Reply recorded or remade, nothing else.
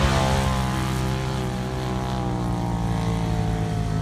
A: recorded